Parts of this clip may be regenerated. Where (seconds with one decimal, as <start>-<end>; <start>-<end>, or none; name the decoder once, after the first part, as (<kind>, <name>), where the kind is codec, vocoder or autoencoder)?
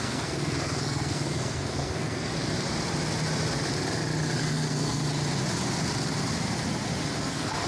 0.0-2.3 (codec, SNAC); 4.4-5.0; 7.3-7.7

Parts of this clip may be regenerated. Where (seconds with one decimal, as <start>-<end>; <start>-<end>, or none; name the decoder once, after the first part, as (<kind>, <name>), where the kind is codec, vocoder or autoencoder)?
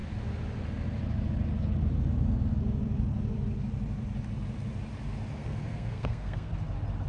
5.4-6.5 (codec, SNAC)